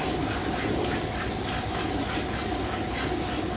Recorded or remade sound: recorded